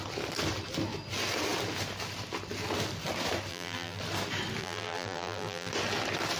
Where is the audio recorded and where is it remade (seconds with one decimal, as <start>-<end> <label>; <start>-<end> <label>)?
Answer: 0.0-3.5 recorded; 3.5-4.0 remade; 4.0-4.6 recorded; 4.6-5.7 remade; 5.7-6.4 recorded